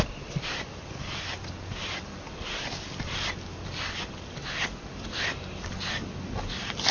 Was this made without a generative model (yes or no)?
yes